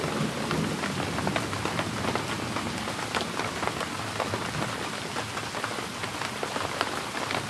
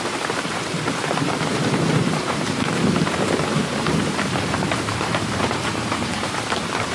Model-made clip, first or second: second